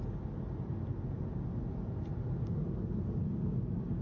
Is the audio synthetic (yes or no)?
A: no